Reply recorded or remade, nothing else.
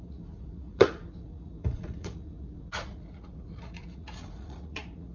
remade